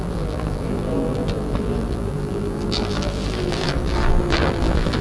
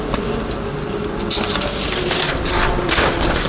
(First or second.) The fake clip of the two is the first